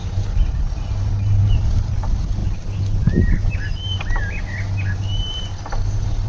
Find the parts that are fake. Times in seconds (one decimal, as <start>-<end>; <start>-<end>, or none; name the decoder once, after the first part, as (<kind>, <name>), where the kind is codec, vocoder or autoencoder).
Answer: none